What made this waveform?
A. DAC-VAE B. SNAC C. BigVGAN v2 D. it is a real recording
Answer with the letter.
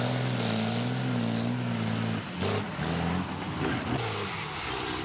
D